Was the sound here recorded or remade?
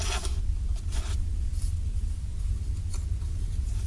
recorded